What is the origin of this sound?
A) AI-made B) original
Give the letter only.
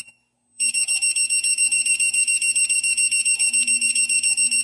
A